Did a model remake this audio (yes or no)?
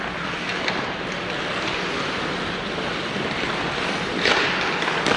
no